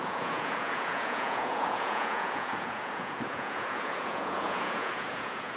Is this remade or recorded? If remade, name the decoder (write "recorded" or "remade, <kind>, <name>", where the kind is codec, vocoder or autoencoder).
remade, vocoder, Vocos